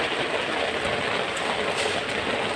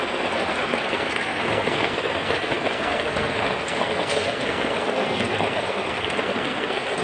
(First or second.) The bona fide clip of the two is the first